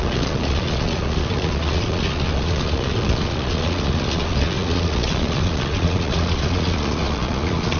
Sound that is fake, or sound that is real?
fake